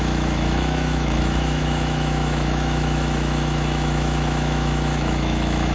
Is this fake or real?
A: fake